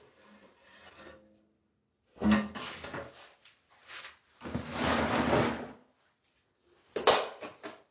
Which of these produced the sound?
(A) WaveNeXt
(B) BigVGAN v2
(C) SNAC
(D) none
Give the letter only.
D